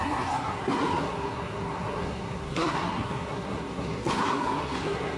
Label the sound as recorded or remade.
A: remade